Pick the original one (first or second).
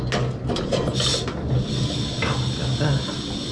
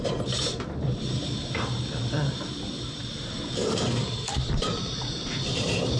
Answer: first